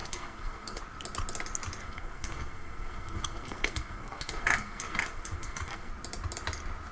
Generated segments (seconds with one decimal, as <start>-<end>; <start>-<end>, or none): 0.0-0.8; 1.8-5.9